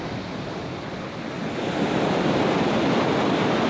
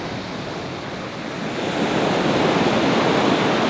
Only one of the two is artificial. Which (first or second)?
first